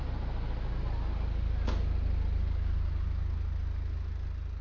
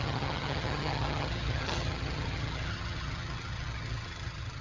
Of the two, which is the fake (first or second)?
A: second